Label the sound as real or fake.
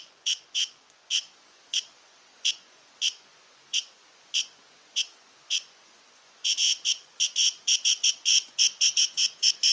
fake